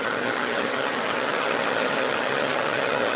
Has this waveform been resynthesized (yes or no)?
yes